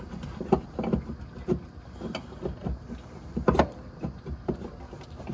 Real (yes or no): yes